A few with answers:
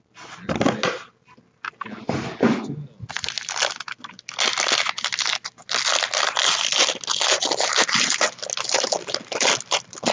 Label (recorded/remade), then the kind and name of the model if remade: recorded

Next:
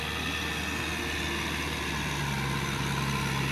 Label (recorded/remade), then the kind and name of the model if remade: recorded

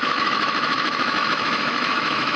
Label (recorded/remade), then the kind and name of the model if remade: remade, autoencoder, DAC-VAE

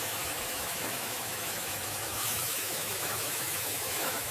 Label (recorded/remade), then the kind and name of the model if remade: remade, autoencoder, DAC-VAE